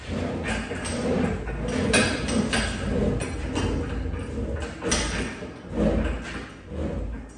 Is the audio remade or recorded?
recorded